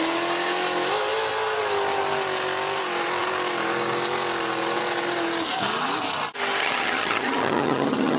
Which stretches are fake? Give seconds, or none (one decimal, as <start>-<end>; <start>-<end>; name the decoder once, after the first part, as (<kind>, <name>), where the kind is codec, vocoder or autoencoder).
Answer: 6.6-8.2 (vocoder, HiFi-GAN)